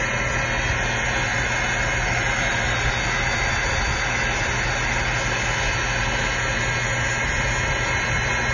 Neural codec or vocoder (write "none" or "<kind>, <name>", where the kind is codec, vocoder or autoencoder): none